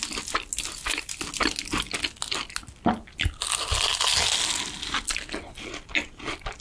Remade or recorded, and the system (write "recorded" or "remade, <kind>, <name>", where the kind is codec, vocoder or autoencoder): recorded